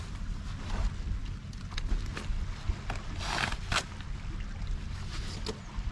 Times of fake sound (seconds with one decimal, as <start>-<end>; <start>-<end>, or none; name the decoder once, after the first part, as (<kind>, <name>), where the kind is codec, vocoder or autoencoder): none